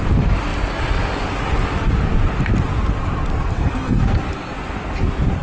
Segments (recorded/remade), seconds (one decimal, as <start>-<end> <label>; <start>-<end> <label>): 0.0-3.3 recorded; 3.3-4.2 remade; 4.2-5.4 recorded